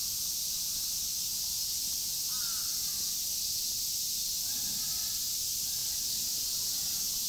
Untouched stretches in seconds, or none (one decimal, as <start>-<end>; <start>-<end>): 0.0-7.3